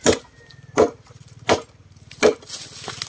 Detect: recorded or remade recorded